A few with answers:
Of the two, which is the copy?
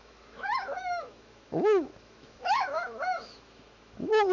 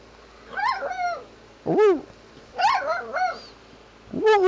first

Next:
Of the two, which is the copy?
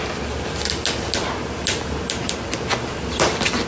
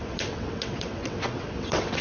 second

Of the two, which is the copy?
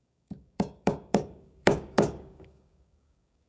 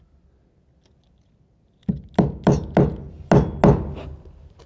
first